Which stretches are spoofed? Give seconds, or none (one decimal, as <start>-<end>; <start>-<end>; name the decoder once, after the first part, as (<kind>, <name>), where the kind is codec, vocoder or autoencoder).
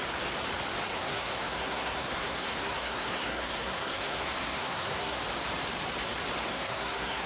0.9-5.2 (codec, SNAC); 6.5-7.3